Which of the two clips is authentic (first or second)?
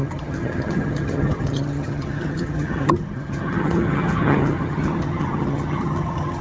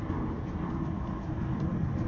second